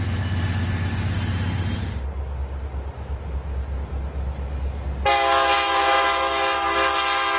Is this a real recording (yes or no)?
yes